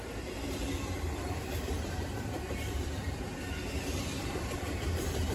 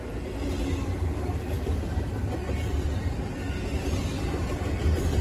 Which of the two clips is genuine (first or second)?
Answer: second